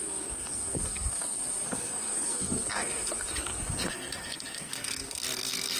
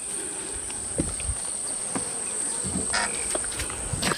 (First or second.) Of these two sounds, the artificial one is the first